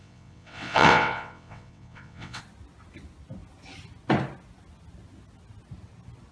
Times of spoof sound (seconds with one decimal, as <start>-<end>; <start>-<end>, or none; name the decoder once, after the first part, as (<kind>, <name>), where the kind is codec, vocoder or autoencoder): 0.0-2.4 (vocoder, WaveNeXt)